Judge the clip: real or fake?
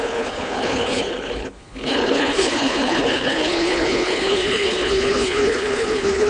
fake